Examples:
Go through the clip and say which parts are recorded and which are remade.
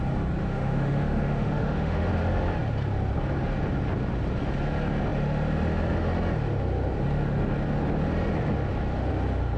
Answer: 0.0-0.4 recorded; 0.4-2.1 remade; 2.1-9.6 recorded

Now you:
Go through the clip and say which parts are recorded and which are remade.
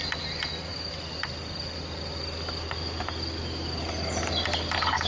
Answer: 0.0-5.1 recorded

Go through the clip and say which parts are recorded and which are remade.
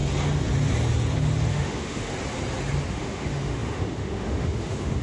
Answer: 0.0-1.5 recorded; 1.5-2.1 remade; 2.1-2.9 recorded; 2.9-5.0 remade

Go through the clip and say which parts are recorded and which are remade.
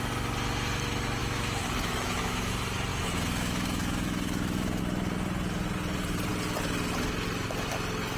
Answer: 0.0-1.2 recorded; 1.2-2.5 remade; 2.5-2.9 recorded; 2.9-4.8 remade; 4.8-8.2 recorded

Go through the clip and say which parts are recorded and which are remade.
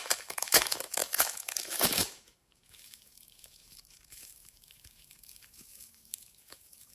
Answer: 0.0-6.9 remade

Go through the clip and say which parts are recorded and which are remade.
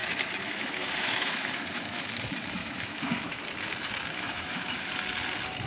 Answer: 0.0-3.4 remade; 3.4-4.1 recorded; 4.1-4.9 remade; 4.9-5.7 recorded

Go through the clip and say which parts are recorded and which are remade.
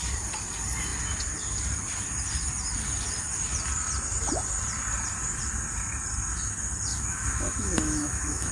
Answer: 0.0-6.9 recorded; 6.9-8.5 remade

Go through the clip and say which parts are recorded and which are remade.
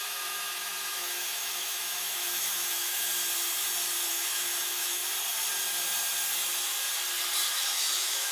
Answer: 0.0-3.1 remade; 3.1-4.1 recorded; 4.1-5.0 remade; 5.0-7.5 recorded; 7.5-8.3 remade